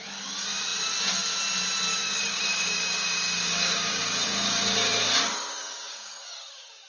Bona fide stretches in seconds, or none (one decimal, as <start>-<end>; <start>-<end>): 0.0-1.9; 4.9-5.6